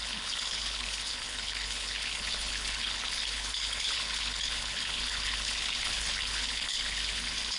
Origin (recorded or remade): remade